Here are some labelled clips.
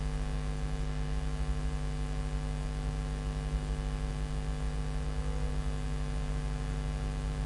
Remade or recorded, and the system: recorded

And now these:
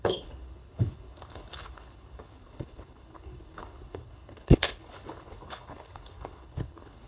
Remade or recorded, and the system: remade, codec, HILCodec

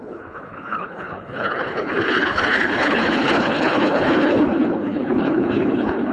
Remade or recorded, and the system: remade, codec, HILCodec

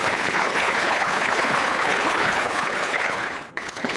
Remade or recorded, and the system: remade, codec, HILCodec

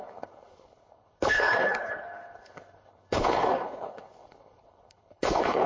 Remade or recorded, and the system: remade, codec, HILCodec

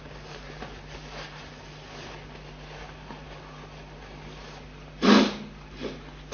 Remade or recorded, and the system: recorded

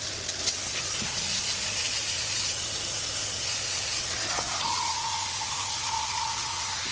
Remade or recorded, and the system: recorded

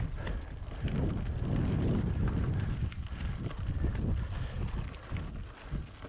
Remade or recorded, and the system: recorded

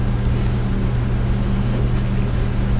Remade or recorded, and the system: recorded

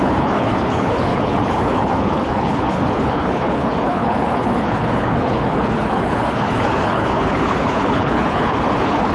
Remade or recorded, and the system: remade, codec, HILCodec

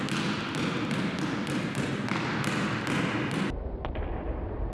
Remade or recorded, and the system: recorded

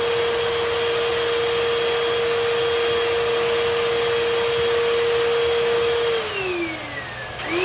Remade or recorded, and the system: recorded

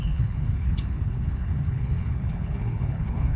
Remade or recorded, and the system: remade, codec, HILCodec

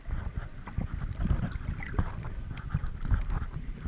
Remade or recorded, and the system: recorded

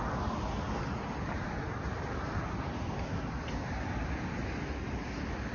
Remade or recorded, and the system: recorded